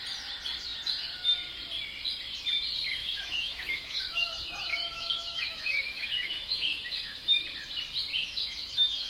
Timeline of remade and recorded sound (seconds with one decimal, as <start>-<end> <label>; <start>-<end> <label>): 0.0-3.0 recorded; 3.0-7.4 remade; 7.4-8.1 recorded; 8.1-9.1 remade